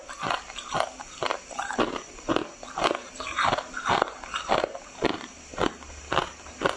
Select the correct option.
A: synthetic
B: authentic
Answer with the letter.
B